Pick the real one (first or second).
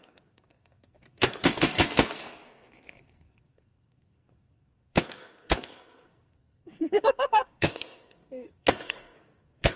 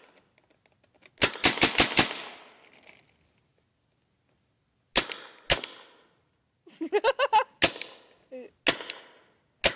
second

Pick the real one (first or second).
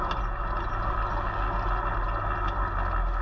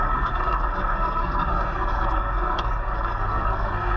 first